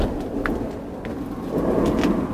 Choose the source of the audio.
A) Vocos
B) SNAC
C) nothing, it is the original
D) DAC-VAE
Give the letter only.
C